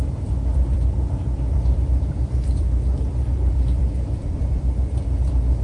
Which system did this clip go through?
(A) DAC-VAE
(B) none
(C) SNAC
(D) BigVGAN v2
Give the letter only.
D